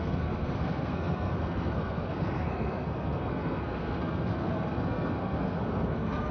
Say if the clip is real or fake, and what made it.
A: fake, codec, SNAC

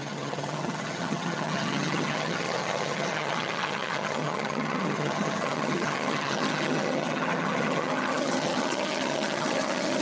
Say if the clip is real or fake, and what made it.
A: fake, vocoder, HiFi-GAN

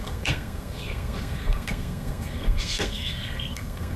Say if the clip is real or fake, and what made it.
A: fake, codec, SNAC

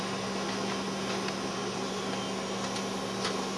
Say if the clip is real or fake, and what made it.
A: real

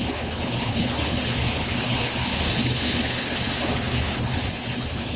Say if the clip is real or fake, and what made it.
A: fake, codec, HILCodec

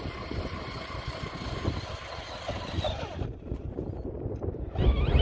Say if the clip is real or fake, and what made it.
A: real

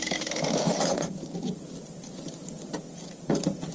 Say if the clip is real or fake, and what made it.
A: real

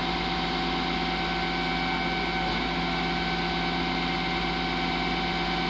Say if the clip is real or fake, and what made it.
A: real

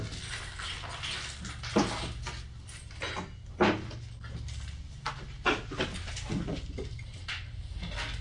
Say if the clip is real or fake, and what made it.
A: real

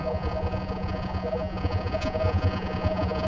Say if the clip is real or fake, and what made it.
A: fake, vocoder, Vocos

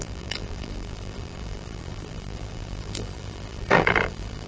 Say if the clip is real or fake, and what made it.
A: fake, vocoder, BigVGAN v2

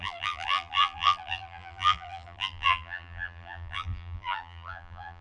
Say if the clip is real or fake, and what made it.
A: fake, vocoder, BigVGAN v2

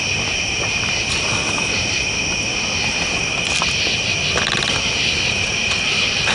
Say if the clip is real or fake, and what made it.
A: real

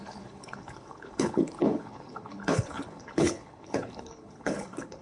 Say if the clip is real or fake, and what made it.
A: fake, codec, HILCodec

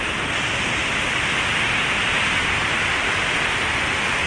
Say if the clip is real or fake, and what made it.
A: real